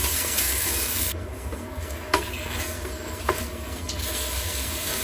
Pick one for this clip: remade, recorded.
remade